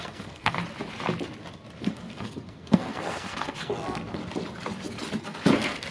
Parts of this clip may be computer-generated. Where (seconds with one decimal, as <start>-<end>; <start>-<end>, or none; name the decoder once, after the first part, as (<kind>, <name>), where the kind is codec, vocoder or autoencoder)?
0.0-0.6 (codec, SNAC); 1.8-4.2; 5.2-5.9